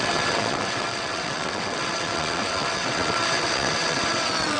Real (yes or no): no